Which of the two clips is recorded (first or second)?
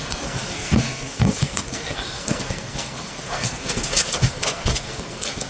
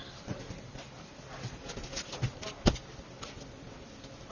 second